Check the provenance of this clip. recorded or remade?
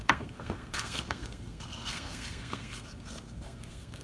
remade